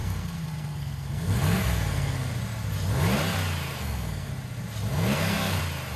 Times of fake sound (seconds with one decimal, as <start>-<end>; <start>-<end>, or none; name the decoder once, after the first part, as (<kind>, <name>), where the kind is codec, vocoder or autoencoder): 0.0-2.3 (codec, SNAC); 3.7-4.3; 4.9-5.6